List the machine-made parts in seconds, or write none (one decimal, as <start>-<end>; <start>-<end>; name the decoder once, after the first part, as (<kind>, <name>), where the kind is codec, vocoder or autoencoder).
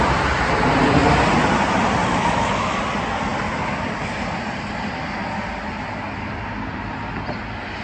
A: 2.1-2.8 (autoencoder, DAC-VAE)